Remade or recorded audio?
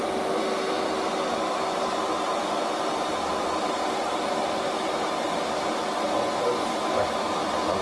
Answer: recorded